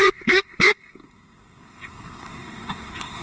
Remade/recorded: remade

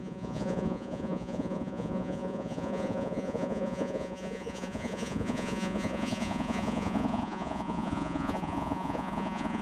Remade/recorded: remade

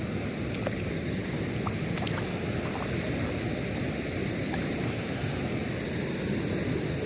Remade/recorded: recorded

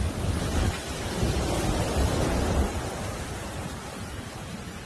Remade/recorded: recorded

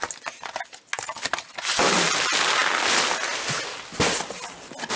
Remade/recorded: recorded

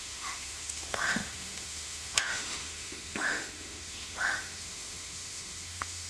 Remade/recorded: remade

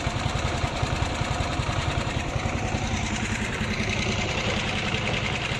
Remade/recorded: remade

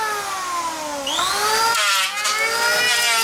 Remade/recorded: recorded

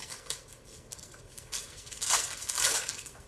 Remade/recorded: remade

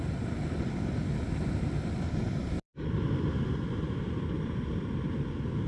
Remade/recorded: remade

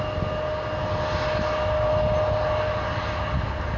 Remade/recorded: recorded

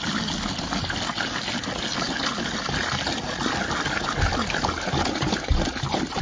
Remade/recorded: recorded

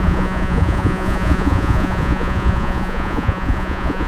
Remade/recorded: remade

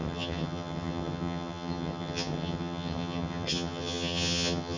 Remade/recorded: remade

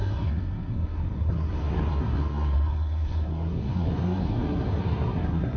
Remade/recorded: remade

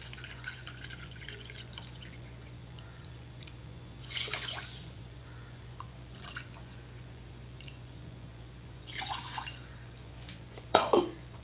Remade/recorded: remade